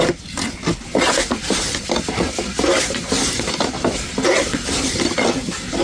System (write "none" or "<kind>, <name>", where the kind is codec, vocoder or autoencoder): none